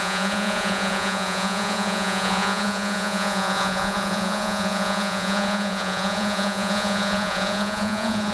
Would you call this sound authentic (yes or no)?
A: no